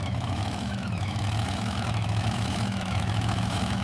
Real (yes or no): no